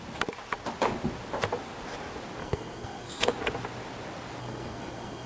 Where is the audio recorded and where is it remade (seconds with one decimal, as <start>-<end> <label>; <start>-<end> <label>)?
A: 0.0-2.4 recorded; 2.4-3.3 remade; 3.3-4.4 recorded; 4.4-5.3 remade